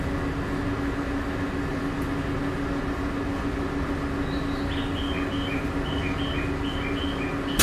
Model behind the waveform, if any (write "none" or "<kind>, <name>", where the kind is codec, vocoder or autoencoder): none